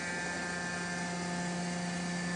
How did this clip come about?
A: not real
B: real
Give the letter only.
B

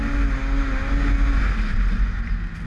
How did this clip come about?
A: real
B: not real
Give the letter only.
A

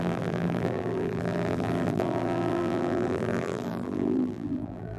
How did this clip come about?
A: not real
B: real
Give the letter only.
A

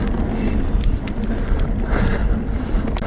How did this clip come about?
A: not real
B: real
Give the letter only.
B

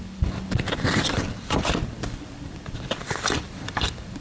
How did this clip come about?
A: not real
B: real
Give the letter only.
A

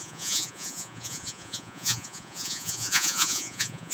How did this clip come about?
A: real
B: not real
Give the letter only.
B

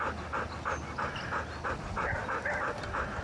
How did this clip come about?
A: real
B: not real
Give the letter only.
A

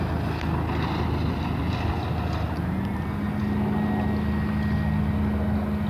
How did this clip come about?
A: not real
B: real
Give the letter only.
B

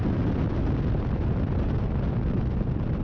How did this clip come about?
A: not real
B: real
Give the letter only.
B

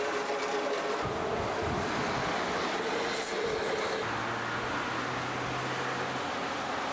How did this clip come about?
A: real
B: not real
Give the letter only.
A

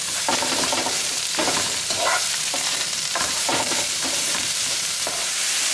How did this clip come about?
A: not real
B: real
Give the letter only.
A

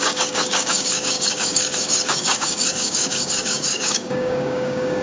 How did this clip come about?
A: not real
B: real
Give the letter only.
A